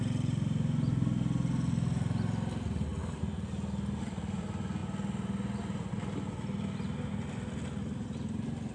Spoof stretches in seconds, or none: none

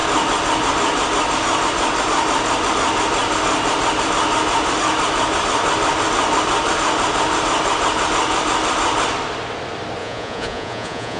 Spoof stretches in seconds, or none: 10.0-11.2

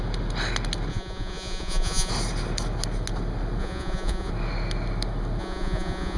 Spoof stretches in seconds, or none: 0.9-2.1; 3.6-4.3; 5.4-6.2

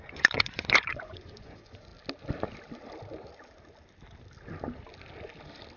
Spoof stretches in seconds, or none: 0.0-1.9

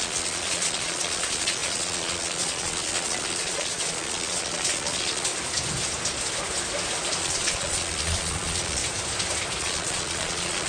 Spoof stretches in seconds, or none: 0.0-5.3; 7.2-8.8; 9.6-10.7